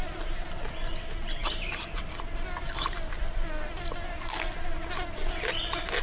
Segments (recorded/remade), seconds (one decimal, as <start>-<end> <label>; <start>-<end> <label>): 0.0-1.4 recorded; 1.4-3.8 remade; 3.8-6.0 recorded

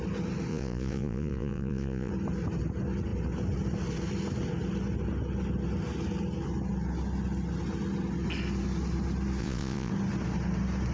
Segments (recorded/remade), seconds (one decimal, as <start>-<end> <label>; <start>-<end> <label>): 0.0-0.5 recorded; 0.5-2.1 remade; 2.1-9.4 recorded; 9.4-9.9 remade; 9.9-10.9 recorded

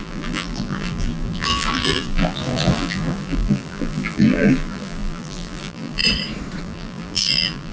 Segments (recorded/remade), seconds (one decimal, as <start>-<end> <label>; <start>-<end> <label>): 0.0-6.0 remade; 6.0-6.6 recorded; 6.6-7.7 remade

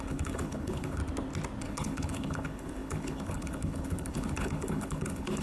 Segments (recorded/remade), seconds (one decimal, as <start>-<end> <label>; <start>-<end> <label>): 0.0-1.0 remade; 1.0-1.6 recorded; 1.6-5.4 remade

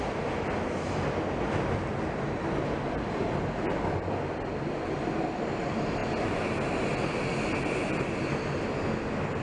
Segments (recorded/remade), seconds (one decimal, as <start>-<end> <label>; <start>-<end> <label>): 0.0-9.4 recorded

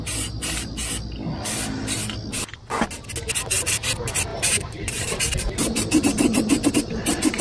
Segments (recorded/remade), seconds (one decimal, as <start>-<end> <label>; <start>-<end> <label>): 0.0-0.7 remade; 0.7-4.3 recorded; 4.3-6.7 remade; 6.7-7.4 recorded